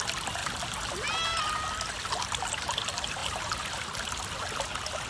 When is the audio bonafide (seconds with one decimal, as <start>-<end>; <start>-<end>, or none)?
0.0-1.3; 2.0-3.2; 3.7-5.1